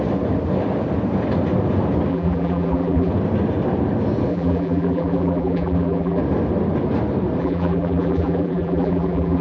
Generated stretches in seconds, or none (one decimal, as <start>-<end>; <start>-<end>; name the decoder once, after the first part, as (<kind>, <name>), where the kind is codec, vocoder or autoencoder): 2.1-3.1 (vocoder, BigVGAN v2); 4.3-6.2; 7.4-9.4